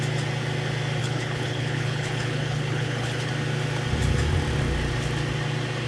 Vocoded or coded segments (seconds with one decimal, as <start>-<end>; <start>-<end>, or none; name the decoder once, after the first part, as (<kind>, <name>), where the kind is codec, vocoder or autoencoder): 1.0-3.3 (codec, HILCodec)